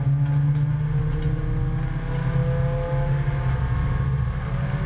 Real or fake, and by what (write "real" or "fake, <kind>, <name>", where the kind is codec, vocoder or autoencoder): real